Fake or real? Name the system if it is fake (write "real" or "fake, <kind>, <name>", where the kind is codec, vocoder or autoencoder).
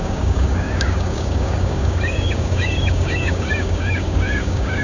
fake, codec, DAC